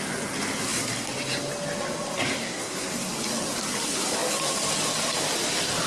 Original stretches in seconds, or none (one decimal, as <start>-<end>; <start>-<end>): 0.0-2.4; 3.1-5.9